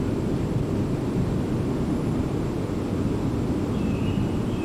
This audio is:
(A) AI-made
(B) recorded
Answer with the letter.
B